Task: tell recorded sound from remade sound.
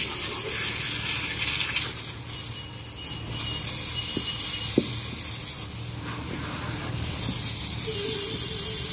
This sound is recorded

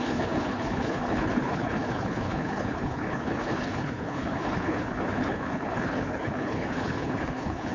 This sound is remade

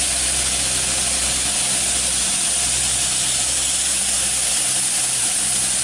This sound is recorded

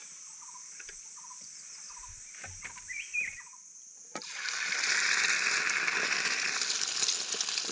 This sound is recorded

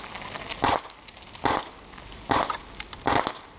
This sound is recorded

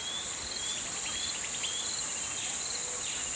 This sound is recorded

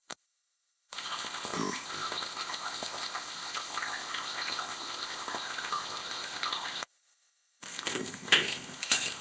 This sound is remade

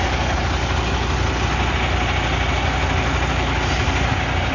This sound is recorded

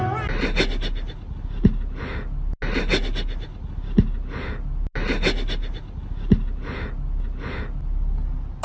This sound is recorded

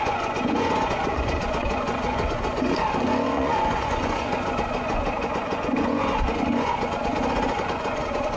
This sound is remade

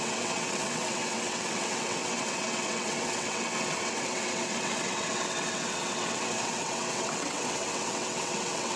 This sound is remade